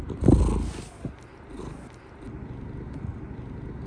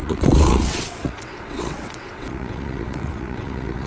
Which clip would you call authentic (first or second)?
first